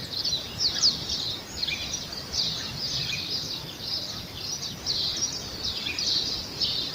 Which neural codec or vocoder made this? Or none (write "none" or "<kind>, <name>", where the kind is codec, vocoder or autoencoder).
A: none